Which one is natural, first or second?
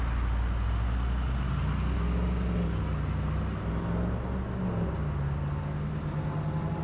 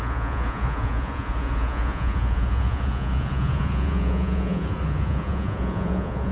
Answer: first